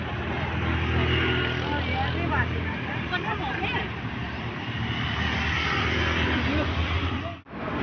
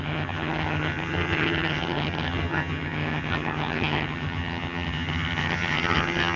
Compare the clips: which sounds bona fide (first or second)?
first